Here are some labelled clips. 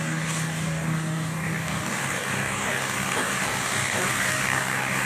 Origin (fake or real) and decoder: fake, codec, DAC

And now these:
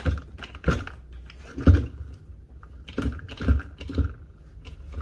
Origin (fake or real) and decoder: real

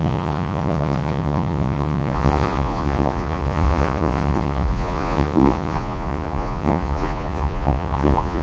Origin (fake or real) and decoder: fake, vocoder, Vocos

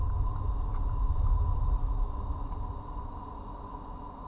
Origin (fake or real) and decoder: real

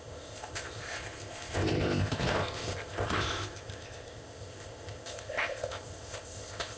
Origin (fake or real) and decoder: fake, codec, ZipCodec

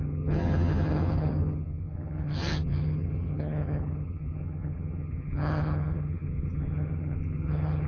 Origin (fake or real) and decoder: fake, vocoder, HiFi-GAN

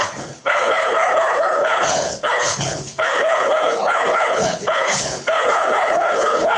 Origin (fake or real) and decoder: fake, codec, HILCodec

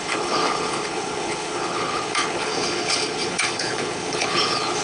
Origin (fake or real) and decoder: fake, codec, HILCodec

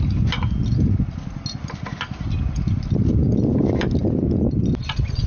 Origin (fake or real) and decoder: real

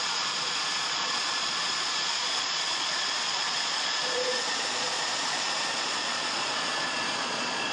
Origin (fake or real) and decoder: fake, vocoder, Vocos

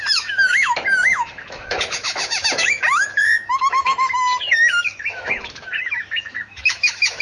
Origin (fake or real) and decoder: fake, autoencoder, DAC-VAE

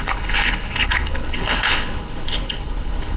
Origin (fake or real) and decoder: fake, codec, HILCodec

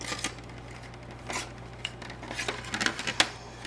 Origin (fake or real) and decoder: real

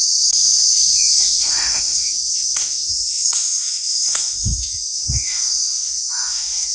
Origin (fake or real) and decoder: fake, autoencoder, DAC-VAE